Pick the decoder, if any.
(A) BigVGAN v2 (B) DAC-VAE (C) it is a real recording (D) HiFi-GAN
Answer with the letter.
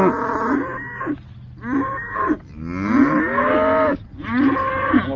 C